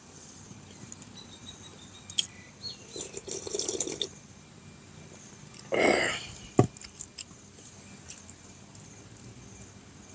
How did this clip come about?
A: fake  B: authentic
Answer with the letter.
B